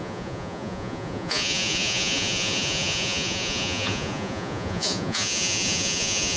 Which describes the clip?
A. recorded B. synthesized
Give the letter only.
B